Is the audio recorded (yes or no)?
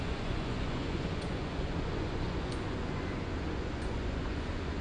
no